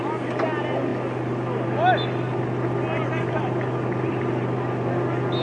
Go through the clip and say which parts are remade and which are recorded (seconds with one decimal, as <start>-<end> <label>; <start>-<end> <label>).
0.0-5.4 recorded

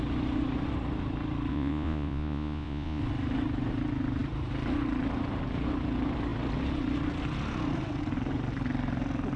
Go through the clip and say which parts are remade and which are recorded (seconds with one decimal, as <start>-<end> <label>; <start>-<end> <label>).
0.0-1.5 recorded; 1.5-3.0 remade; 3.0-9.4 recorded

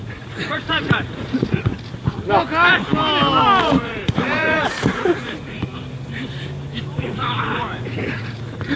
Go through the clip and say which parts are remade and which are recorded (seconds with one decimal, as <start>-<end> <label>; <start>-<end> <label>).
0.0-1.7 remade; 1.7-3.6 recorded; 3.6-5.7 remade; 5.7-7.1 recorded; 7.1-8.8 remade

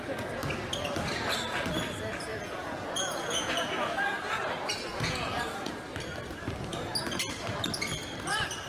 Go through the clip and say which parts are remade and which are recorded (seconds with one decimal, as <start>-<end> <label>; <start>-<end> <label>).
0.0-2.3 recorded; 2.3-4.4 remade; 4.4-4.9 recorded; 4.9-5.7 remade; 5.7-8.7 recorded